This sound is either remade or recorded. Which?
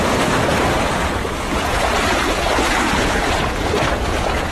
remade